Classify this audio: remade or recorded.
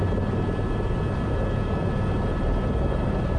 remade